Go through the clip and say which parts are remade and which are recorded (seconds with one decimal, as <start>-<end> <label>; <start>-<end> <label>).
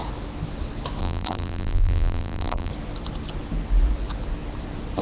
0.0-1.0 recorded; 1.0-2.7 remade; 2.7-5.0 recorded